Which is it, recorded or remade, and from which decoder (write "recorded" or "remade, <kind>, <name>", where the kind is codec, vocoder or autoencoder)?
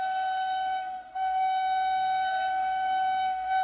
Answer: remade, codec, SNAC